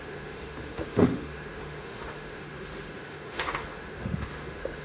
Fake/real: fake